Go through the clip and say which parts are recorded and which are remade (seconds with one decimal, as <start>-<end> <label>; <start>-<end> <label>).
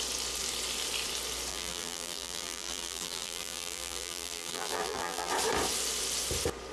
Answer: 0.0-1.5 recorded; 1.5-5.3 remade; 5.3-6.7 recorded